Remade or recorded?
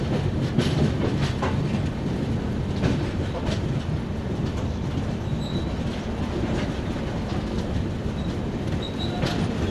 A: recorded